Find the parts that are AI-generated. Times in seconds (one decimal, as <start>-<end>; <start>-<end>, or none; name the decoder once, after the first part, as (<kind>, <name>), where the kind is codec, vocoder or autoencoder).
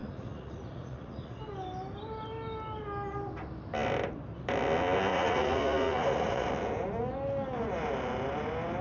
0.0-1.4 (vocoder, Vocos); 5.1-6.5